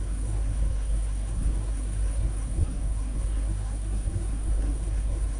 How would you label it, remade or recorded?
remade